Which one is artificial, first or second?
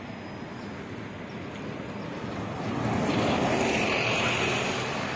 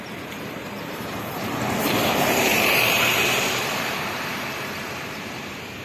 second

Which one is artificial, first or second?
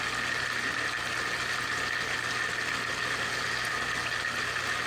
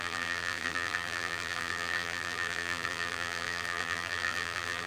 second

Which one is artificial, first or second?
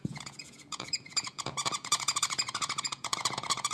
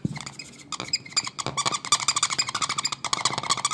first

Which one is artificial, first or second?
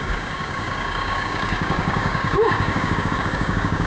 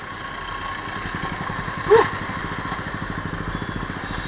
first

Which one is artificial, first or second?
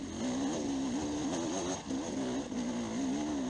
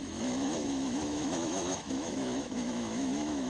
second